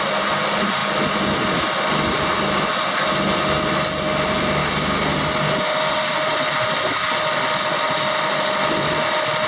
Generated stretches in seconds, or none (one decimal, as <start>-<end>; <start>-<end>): 4.6-5.1